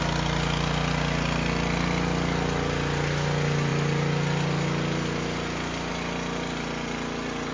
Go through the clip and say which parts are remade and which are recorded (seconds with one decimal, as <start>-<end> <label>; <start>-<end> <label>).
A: 0.0-7.5 recorded